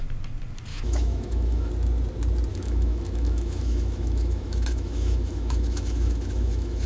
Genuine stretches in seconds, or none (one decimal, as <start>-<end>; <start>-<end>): 0.0-0.7; 1.7-2.5